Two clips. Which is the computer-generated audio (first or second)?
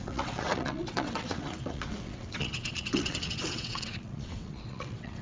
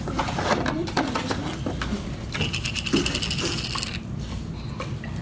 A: first